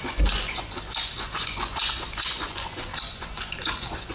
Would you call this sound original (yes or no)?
no